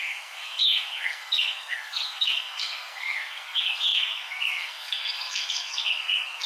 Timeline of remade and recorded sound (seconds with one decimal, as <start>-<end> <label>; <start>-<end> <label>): 0.0-6.5 remade